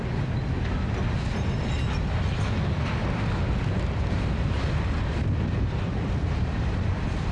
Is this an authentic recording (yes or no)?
yes